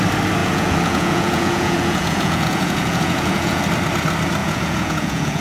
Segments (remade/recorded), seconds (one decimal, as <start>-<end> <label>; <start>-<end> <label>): 0.0-0.4 recorded; 0.4-3.6 remade; 3.6-4.4 recorded; 4.4-5.4 remade